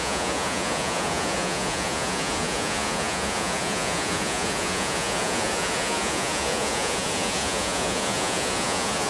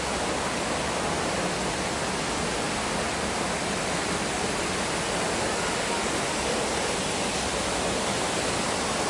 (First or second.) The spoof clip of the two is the first